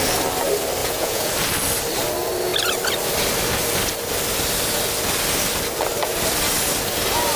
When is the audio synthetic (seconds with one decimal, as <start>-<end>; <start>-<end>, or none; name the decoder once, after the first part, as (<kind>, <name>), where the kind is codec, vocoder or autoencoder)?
0.8-1.3 (vocoder, Vocos)